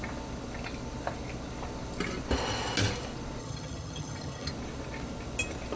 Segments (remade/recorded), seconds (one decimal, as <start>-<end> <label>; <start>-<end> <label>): 0.0-3.4 recorded; 3.4-4.5 remade; 4.5-5.8 recorded